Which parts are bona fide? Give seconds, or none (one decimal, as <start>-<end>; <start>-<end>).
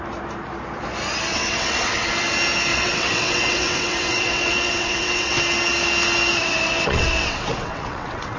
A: 0.0-1.3; 2.1-2.7; 5.4-6.4